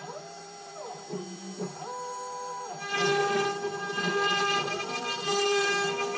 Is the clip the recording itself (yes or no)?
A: no